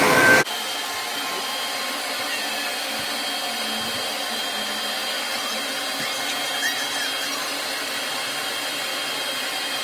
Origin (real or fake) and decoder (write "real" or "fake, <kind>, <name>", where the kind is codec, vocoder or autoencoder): real